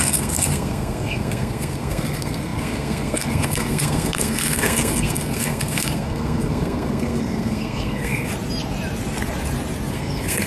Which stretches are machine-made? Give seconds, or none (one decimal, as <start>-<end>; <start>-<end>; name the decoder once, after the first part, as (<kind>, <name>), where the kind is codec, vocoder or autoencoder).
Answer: 0.0-8.3 (codec, SNAC); 9.9-10.5